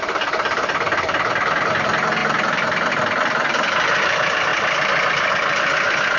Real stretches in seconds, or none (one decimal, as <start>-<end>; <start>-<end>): 0.0-6.2